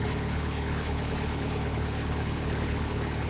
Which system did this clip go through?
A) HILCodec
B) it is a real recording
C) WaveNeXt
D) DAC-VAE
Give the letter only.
A